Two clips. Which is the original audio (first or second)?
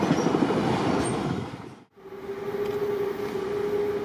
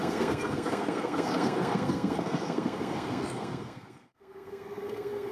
first